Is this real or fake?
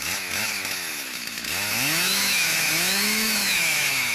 fake